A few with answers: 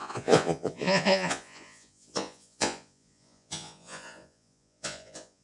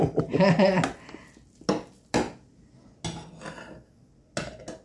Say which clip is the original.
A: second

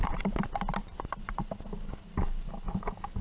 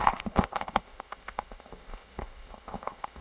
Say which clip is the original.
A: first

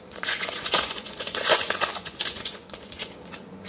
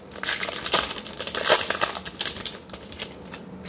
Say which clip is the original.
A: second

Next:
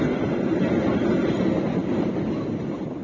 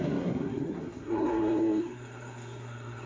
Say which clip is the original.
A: first